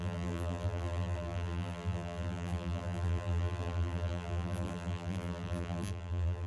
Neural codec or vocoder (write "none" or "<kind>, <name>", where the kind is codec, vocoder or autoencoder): vocoder, BigVGAN v2